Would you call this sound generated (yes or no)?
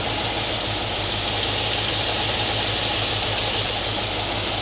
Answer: no